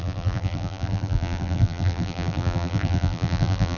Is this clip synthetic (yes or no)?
yes